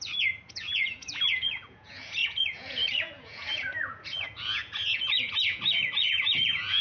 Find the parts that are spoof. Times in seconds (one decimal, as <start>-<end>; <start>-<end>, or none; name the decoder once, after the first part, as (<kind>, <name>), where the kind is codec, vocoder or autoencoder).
0.0-6.8 (vocoder, Vocos)